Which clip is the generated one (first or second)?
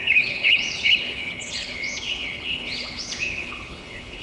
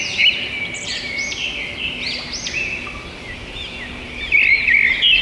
first